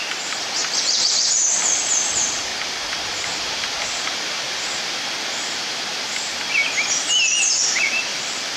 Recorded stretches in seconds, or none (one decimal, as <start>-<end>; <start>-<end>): 0.6-1.1; 2.5-7.4